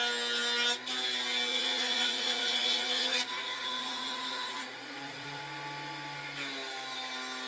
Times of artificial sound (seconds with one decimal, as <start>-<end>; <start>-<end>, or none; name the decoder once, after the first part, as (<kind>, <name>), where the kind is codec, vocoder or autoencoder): 1.5-5.4 (vocoder, Vocos)